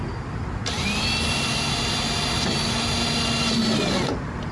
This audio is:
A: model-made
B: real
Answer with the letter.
B